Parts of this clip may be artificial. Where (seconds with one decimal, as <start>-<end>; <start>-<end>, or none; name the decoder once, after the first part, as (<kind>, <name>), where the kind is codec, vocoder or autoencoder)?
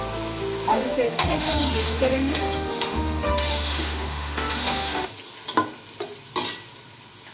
0.7-5.1 (autoencoder, DAC-VAE)